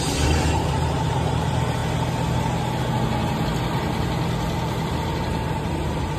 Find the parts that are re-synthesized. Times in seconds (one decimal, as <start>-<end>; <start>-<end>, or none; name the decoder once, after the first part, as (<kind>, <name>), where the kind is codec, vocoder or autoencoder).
0.0-1.8 (vocoder, BigVGAN v2); 5.5-6.2